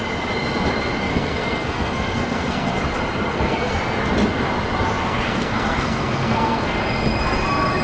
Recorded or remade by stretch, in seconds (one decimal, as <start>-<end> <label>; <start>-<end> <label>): 0.0-1.1 recorded; 1.1-2.7 remade; 2.7-3.3 recorded; 3.3-3.8 remade; 3.8-5.0 recorded; 5.0-6.8 remade; 6.8-7.8 recorded